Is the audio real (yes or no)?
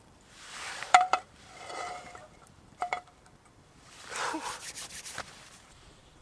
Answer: no